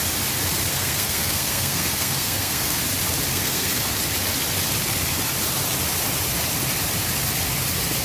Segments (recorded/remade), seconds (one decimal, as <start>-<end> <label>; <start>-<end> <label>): 0.0-0.7 recorded; 0.7-2.8 remade; 2.8-3.3 recorded; 3.3-3.8 remade; 3.8-8.0 recorded